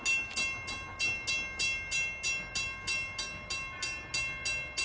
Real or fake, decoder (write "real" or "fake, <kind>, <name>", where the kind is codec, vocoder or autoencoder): real